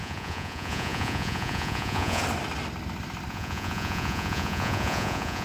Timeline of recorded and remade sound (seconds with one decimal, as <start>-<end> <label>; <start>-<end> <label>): 0.0-2.2 remade; 2.2-3.3 recorded; 3.3-5.4 remade